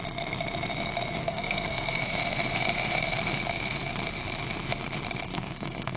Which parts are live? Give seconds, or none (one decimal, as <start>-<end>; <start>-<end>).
0.0-1.2; 2.0-5.3